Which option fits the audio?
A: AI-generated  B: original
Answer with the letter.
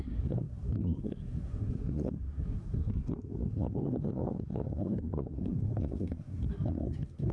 A